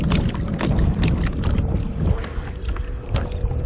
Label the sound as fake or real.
real